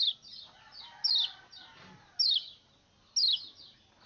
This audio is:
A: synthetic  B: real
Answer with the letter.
B